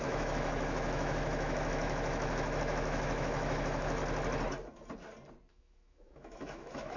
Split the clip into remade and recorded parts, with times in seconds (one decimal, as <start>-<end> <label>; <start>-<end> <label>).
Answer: 0.0-4.0 remade; 4.0-5.5 recorded; 5.5-7.0 remade